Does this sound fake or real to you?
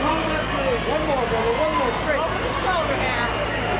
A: real